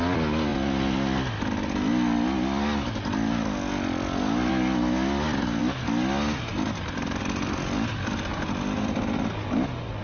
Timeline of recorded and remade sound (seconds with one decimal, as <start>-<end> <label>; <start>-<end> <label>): 0.0-10.0 recorded